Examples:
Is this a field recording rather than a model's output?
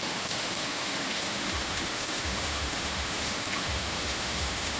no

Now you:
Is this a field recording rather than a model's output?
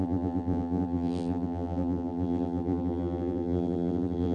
no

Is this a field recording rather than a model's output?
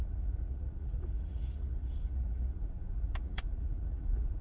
no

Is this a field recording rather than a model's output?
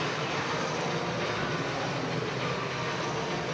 yes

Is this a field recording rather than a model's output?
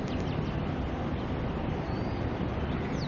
yes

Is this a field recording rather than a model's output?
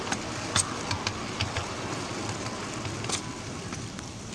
yes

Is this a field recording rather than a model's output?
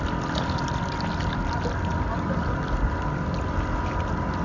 yes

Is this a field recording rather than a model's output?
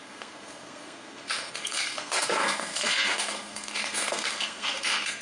no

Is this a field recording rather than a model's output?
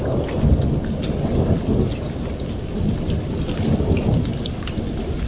yes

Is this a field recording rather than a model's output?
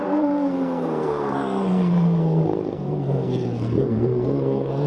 no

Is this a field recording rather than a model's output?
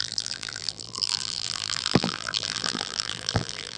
no